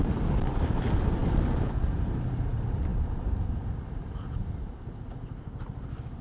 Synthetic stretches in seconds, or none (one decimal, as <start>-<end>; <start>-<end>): none